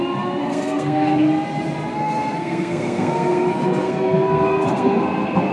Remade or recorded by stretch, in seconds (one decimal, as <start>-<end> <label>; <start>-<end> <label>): 0.0-0.4 recorded; 0.4-1.2 remade; 1.2-1.9 recorded; 1.9-5.5 remade